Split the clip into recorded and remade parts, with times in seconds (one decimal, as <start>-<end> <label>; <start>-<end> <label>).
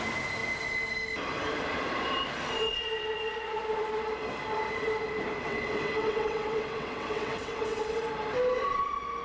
0.0-5.4 recorded; 5.4-7.8 remade; 7.8-9.2 recorded